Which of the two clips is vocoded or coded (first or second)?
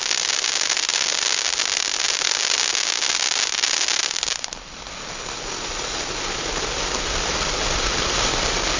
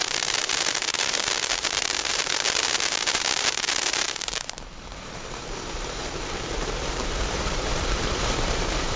second